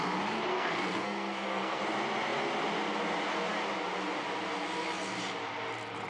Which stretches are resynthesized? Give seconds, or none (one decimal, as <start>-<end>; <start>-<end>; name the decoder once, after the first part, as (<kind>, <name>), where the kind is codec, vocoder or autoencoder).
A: 0.5-1.8 (codec, SNAC)